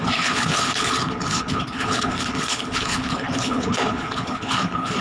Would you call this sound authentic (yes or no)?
no